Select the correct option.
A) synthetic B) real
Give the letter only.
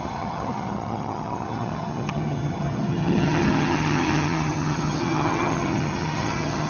A